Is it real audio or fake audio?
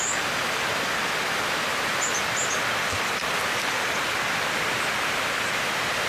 real